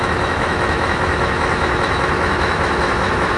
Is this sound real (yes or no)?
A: no